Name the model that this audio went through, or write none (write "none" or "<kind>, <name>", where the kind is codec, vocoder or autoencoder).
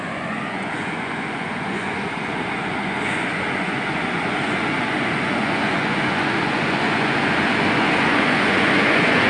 vocoder, Vocos